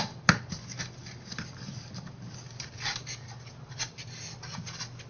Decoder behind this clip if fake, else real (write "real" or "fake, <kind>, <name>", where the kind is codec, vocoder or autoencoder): real